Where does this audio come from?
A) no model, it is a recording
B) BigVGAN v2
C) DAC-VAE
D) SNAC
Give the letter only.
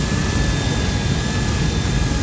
A